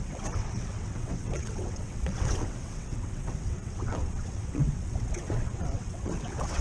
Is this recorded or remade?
remade